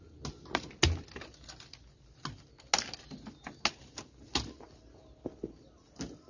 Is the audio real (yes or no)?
yes